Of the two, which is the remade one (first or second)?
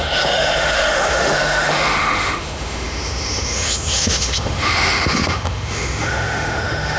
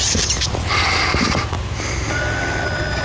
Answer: first